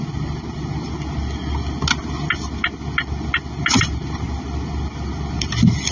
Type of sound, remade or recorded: recorded